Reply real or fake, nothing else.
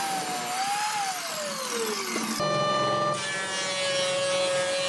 real